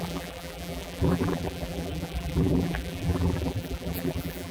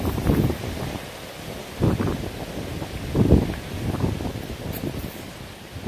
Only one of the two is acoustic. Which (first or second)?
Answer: second